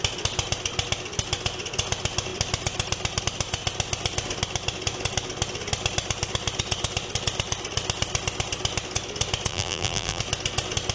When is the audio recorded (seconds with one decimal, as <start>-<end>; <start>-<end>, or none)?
0.0-9.5; 10.2-10.9